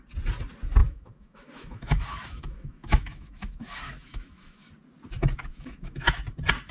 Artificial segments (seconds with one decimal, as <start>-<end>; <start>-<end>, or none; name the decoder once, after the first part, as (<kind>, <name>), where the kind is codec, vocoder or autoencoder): 0.8-4.7 (autoencoder, DAC-VAE); 5.5-6.1